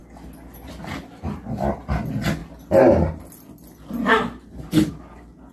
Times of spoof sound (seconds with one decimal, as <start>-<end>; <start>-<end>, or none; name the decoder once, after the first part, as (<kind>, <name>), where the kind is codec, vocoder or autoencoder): none